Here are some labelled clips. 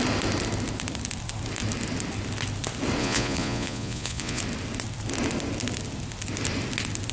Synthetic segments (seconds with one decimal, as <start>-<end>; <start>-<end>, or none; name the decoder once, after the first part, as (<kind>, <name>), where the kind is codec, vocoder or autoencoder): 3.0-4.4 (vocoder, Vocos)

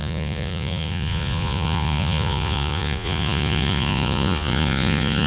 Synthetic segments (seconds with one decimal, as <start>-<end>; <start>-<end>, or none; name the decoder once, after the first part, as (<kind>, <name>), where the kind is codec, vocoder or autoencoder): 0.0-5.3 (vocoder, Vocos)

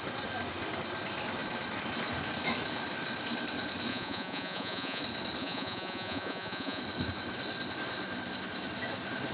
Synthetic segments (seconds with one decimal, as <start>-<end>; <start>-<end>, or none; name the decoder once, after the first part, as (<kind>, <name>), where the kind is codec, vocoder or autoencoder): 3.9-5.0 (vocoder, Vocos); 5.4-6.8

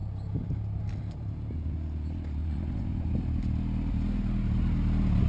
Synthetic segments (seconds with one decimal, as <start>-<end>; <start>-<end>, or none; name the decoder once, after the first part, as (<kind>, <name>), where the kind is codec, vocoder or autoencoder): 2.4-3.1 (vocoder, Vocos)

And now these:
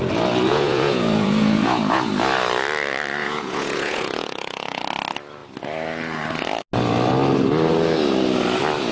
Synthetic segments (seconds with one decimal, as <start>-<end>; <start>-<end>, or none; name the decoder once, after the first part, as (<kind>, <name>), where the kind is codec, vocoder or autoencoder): 0.5-2.1 (vocoder, Vocos); 3.2-4.8

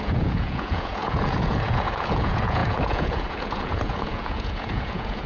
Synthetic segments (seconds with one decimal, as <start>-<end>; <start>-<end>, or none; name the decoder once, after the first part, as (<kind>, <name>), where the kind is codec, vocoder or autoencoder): 0.0-5.3 (vocoder, Vocos)

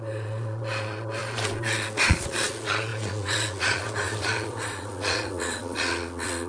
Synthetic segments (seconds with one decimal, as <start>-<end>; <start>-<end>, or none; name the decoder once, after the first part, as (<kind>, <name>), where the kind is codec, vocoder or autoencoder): 0.0-6.5 (vocoder, Vocos)